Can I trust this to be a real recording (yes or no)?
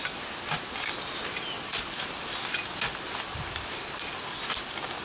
yes